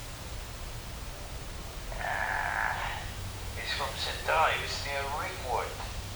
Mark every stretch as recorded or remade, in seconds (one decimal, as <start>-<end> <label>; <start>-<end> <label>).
0.0-2.7 recorded; 2.7-4.0 remade; 4.0-6.2 recorded